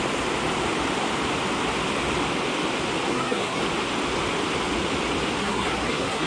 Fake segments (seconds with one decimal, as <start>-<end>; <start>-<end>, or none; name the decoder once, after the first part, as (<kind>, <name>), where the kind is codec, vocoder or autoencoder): 3.1-3.6 (codec, SNAC); 5.4-6.3